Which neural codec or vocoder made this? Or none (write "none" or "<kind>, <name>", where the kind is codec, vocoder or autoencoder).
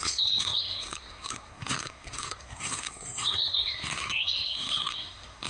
codec, SNAC